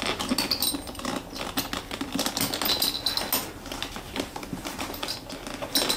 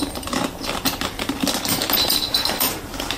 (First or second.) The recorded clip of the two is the first